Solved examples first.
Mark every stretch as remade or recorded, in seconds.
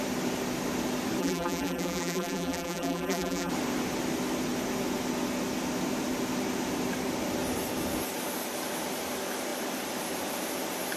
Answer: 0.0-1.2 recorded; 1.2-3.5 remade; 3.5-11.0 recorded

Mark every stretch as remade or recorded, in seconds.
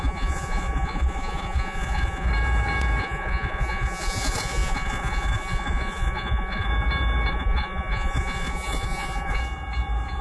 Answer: 0.0-2.3 remade; 2.3-3.0 recorded; 3.0-6.7 remade; 6.7-7.3 recorded; 7.3-9.4 remade; 9.4-10.2 recorded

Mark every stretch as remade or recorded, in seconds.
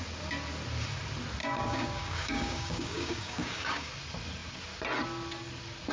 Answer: 0.0-1.4 recorded; 1.4-3.9 remade; 3.9-5.9 recorded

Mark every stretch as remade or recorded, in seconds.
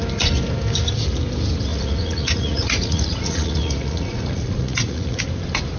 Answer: 0.0-1.7 recorded; 1.7-5.2 remade; 5.2-5.8 recorded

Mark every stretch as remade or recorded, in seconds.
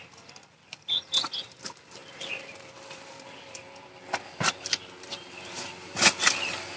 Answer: 0.0-6.8 recorded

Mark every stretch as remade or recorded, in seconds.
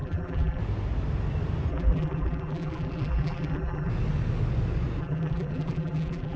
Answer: 0.0-0.6 remade; 0.6-1.7 recorded; 1.7-3.9 remade; 3.9-5.0 recorded; 5.0-6.4 remade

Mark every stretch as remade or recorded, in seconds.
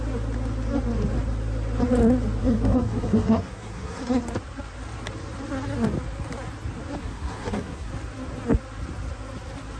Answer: 0.0-2.4 recorded; 2.4-4.2 remade; 4.2-7.0 recorded; 7.0-7.9 remade; 7.9-9.8 recorded